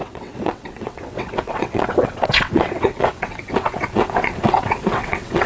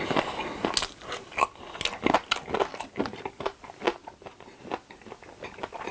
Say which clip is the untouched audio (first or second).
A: second